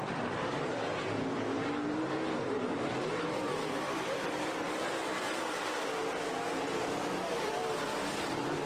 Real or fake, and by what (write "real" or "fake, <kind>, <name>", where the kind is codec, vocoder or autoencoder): fake, vocoder, BigVGAN v2